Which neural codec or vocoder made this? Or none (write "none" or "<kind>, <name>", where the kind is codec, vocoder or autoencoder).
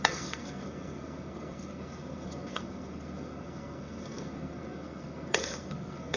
codec, SNAC